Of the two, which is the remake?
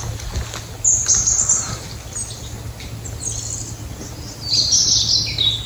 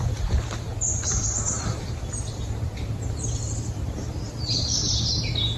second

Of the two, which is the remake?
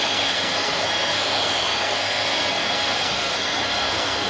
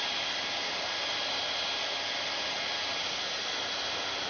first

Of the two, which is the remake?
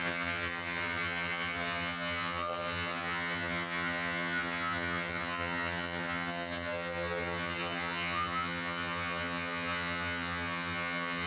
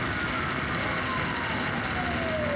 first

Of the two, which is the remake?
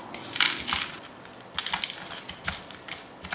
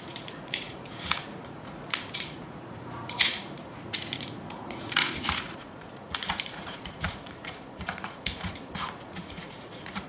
second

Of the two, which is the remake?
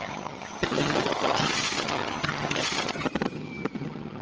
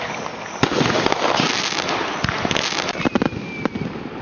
first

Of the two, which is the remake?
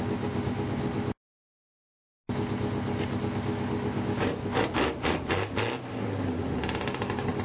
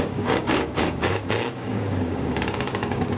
second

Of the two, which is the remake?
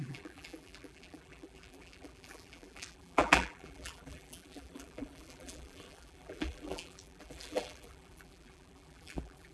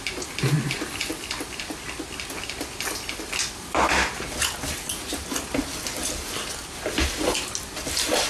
first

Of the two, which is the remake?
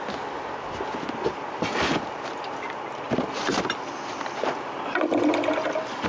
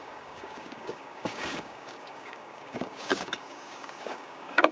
second